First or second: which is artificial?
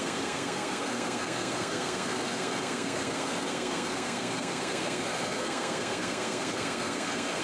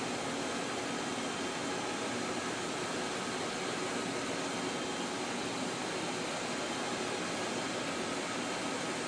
first